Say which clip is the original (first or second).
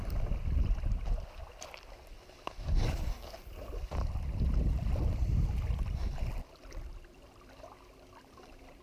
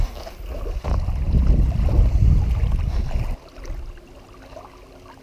second